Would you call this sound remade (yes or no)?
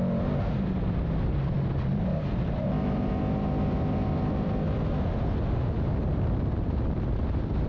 no